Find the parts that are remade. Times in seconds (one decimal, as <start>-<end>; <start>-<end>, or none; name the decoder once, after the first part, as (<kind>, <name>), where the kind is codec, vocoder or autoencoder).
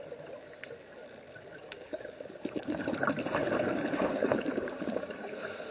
1.6-2.8 (codec, DAC); 3.4-5.3